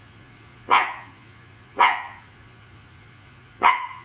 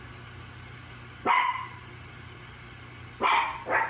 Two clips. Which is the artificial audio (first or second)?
first